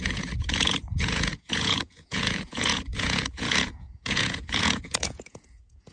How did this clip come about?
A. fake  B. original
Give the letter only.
A